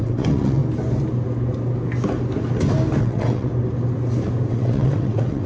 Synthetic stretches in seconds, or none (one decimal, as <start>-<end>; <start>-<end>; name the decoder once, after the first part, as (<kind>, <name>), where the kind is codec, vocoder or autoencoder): 0.0-0.6 (vocoder, WaveNeXt); 3.0-3.5; 4.5-5.5